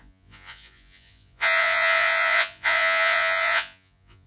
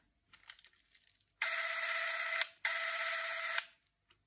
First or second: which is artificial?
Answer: first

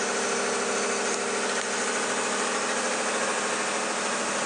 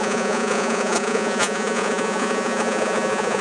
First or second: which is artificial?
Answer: second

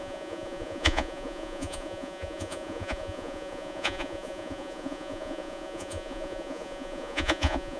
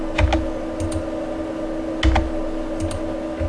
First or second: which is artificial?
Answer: first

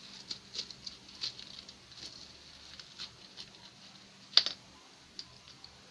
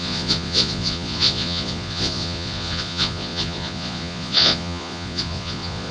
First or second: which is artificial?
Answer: second